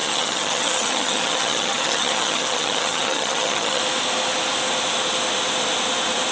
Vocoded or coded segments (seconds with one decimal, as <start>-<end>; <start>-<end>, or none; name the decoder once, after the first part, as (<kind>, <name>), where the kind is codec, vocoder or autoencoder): 0.0-3.8 (vocoder, HiFi-GAN)